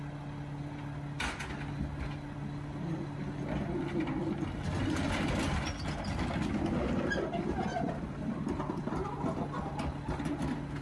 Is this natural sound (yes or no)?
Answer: yes